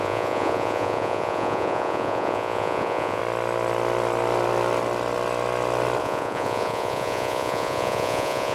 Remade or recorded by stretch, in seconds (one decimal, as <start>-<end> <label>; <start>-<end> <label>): 0.0-3.2 remade; 3.2-6.0 recorded; 6.0-8.5 remade